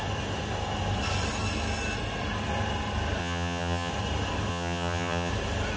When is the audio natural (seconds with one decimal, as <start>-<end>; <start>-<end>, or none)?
0.0-3.2; 3.9-4.5; 5.3-5.8